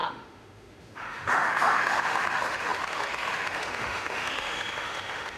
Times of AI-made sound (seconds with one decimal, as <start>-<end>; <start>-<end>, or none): 0.0-5.4